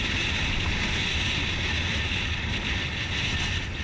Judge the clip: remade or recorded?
recorded